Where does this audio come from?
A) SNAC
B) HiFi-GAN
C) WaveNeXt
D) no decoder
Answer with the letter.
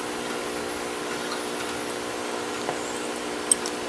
D